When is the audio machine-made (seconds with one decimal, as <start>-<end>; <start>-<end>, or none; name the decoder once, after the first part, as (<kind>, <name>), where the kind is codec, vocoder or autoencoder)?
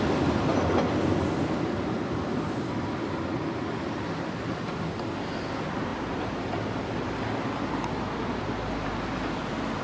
none